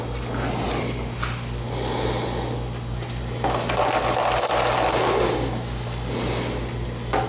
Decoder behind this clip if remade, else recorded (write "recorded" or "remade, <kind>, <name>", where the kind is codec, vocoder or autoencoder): recorded